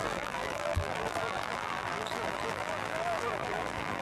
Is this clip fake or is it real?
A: fake